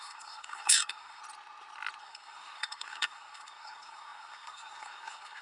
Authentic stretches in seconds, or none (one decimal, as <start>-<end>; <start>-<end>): 1.2-2.0